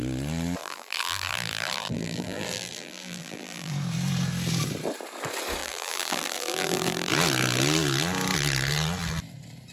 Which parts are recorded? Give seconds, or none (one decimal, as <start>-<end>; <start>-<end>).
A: 0.0-0.6; 3.7-5.6; 7.1-9.7